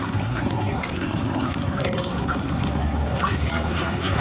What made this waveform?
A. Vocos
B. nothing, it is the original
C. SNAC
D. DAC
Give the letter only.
C